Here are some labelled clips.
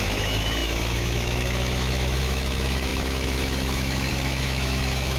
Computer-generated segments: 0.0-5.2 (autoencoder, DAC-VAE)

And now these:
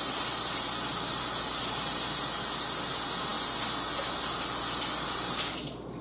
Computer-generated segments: none

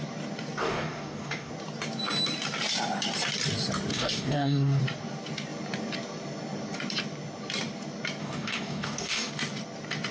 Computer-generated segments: 0.6-1.5 (codec, DAC); 3.9-4.8; 8.2-9.3

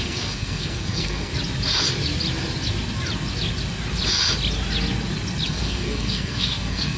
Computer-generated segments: 0.0-1.3 (codec, SNAC); 5.5-7.0